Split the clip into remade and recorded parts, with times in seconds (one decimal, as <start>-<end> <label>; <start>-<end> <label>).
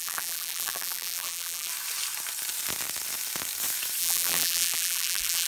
0.0-1.7 remade; 1.7-4.0 recorded; 4.0-5.5 remade